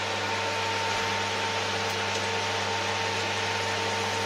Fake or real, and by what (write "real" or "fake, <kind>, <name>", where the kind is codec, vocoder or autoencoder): real